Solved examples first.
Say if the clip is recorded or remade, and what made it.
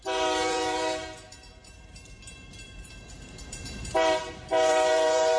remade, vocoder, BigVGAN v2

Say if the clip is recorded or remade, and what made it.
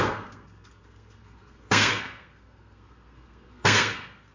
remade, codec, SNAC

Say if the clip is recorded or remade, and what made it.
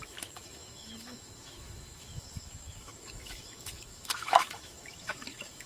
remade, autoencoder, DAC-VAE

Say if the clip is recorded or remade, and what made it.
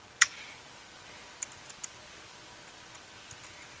recorded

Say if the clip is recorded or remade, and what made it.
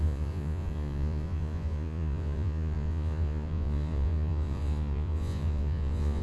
remade, vocoder, Vocos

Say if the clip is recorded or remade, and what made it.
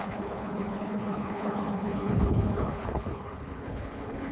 remade, codec, HILCodec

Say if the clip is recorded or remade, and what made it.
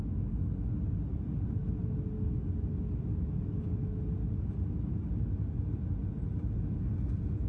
recorded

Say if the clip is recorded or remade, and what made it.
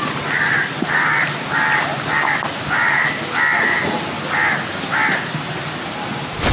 recorded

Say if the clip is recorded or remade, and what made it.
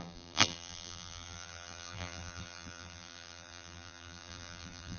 remade, vocoder, BigVGAN v2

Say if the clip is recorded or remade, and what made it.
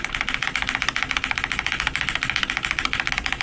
recorded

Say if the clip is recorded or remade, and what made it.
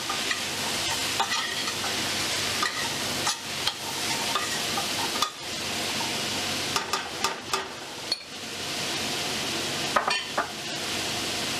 recorded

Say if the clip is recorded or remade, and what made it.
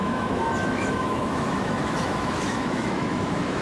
remade, autoencoder, DAC-VAE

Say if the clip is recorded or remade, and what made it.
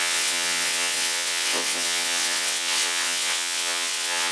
remade, vocoder, WaveNeXt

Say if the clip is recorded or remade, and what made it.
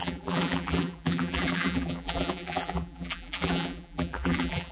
remade, vocoder, BigVGAN v2